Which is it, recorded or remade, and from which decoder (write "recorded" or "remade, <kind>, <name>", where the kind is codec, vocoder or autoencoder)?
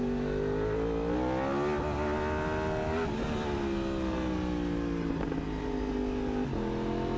recorded